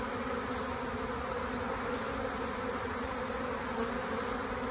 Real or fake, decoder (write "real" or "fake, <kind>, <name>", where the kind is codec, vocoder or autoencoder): real